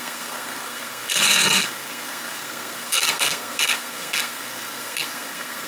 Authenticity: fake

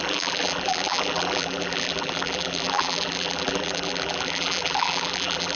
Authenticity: fake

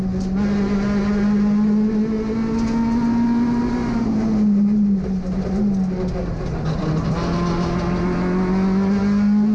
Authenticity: real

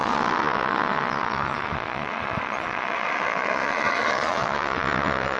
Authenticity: fake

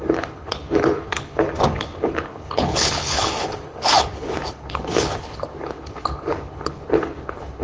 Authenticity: fake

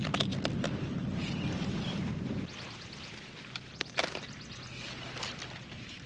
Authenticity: real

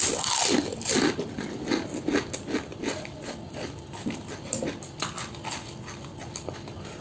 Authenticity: real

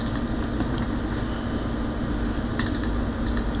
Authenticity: real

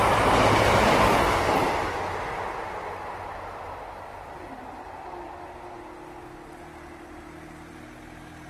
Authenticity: real